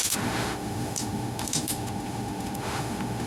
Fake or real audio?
fake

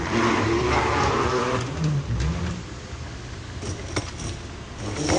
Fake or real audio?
real